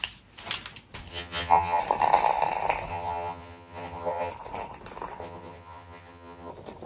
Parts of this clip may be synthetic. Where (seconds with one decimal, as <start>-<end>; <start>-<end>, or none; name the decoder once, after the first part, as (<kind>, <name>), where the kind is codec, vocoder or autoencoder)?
1.1-1.8 (vocoder, HiFi-GAN); 2.9-4.3; 5.2-6.5